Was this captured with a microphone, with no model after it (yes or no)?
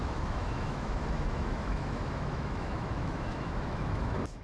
no